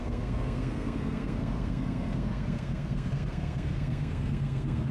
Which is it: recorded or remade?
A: remade